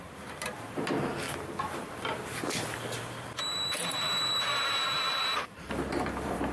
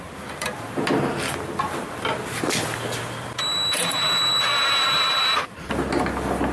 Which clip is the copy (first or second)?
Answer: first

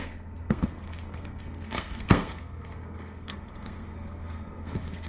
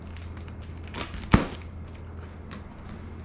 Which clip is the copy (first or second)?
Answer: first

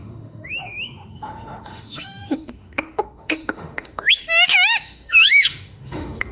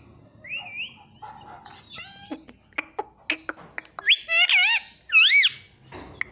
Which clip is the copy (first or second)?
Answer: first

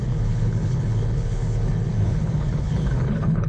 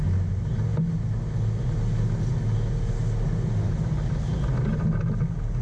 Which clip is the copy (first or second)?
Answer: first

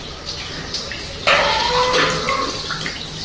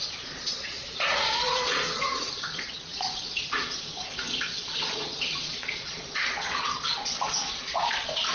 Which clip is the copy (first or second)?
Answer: second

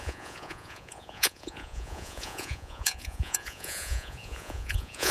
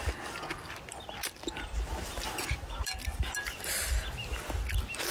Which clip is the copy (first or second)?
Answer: first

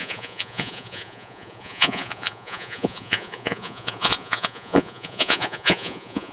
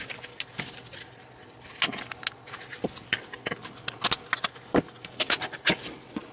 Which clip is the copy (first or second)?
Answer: first